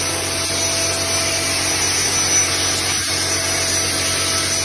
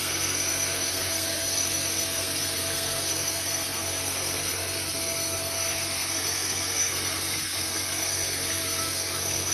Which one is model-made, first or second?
second